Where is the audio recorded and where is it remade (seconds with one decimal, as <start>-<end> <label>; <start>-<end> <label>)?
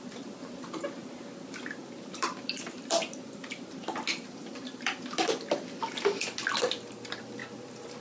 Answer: 0.0-8.0 remade